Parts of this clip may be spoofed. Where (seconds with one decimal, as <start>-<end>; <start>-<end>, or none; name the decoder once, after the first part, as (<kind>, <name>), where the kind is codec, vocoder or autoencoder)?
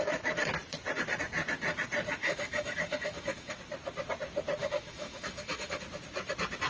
2.2-3.6 (autoencoder, DAC-VAE); 4.6-5.8